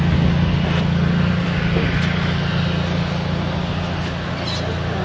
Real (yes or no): yes